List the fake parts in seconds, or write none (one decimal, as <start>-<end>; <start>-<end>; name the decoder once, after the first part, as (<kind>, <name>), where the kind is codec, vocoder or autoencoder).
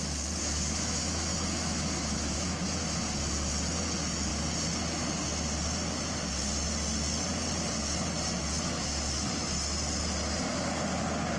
0.4-3.0 (autoencoder, DAC-VAE)